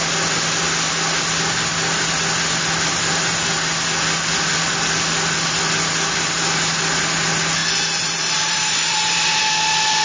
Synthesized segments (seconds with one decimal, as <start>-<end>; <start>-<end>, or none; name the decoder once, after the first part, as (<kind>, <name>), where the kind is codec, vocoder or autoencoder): 7.6-9.4 (vocoder, BigVGAN v2)